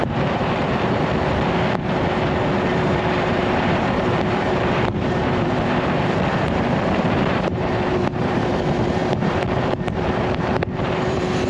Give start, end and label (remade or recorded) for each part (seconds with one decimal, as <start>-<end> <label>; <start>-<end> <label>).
0.0-0.6 remade; 0.6-2.7 recorded; 2.7-11.5 remade